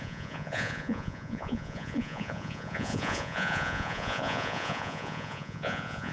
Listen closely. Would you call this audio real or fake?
fake